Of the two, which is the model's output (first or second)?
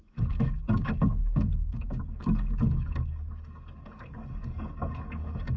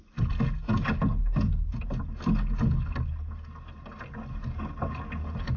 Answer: first